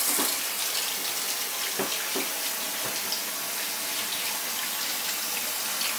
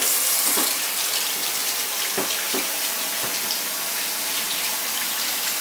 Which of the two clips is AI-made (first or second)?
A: second